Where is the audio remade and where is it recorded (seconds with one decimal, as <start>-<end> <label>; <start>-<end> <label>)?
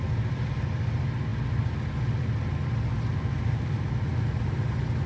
0.0-5.1 recorded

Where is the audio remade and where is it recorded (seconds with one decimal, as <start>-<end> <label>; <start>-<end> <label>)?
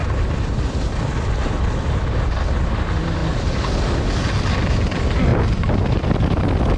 0.0-6.8 recorded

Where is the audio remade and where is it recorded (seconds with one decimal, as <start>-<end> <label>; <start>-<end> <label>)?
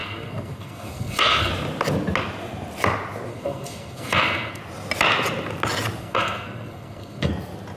0.0-1.5 remade; 1.5-3.3 recorded; 3.3-4.6 remade; 4.6-6.0 recorded; 6.0-7.3 remade; 7.3-7.8 recorded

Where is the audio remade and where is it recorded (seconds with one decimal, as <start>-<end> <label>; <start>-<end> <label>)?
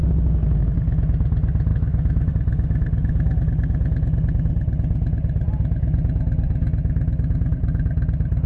0.0-1.7 recorded; 1.7-2.3 remade; 2.3-8.5 recorded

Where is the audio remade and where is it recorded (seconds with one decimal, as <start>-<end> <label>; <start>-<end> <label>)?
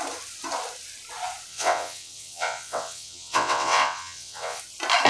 0.0-1.5 recorded; 1.5-4.6 remade; 4.6-5.1 recorded